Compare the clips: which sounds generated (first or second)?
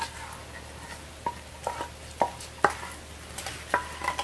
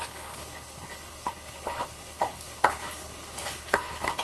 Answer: second